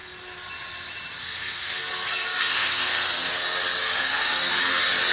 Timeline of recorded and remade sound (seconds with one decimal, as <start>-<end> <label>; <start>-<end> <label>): 0.0-1.2 recorded; 1.2-3.3 remade; 3.3-3.8 recorded; 3.8-4.5 remade; 4.5-5.1 recorded